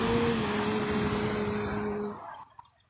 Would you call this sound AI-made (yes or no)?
no